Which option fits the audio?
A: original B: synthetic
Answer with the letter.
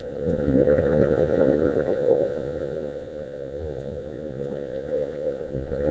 B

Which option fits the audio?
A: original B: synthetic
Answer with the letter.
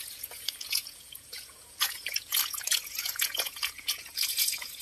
B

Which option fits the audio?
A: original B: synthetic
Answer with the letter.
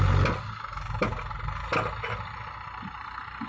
A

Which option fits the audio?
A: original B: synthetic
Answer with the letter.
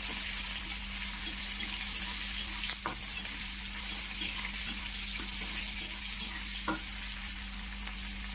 A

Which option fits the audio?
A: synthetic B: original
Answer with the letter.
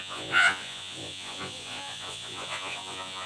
A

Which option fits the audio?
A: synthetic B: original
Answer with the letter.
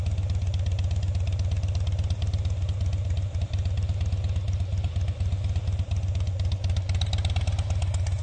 B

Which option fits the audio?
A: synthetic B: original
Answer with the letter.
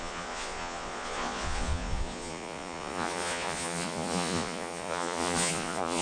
A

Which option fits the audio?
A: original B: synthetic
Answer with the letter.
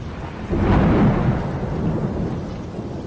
A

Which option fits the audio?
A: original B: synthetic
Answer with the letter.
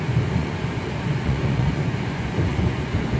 B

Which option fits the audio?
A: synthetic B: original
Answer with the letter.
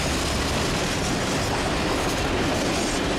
B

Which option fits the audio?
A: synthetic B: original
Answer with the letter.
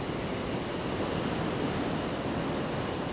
B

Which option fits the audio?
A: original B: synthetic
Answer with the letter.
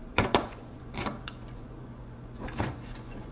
B